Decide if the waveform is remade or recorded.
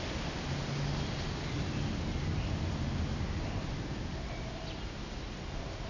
recorded